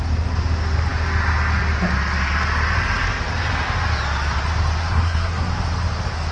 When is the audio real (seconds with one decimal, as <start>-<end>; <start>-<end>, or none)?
0.0-4.8; 5.5-6.3